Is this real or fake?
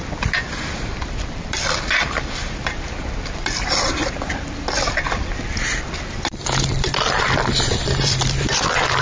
fake